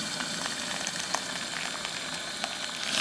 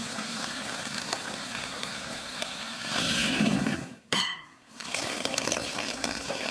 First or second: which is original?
first